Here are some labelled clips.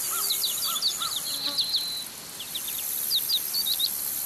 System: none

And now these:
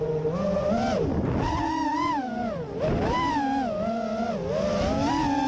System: none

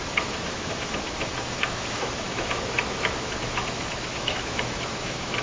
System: autoencoder, DAC-VAE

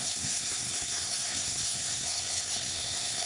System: codec, SNAC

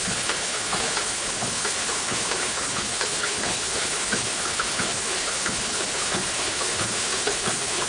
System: codec, HILCodec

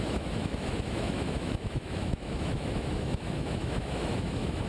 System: autoencoder, DAC-VAE